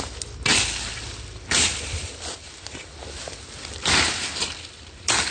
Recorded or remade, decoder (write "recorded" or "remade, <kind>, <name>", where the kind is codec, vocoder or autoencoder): recorded